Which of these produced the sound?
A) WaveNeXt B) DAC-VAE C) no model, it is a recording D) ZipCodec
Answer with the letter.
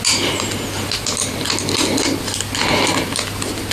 C